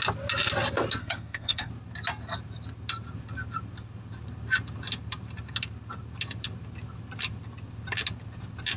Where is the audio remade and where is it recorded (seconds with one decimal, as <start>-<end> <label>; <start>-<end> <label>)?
0.0-1.0 recorded; 1.0-1.7 remade; 1.7-8.8 recorded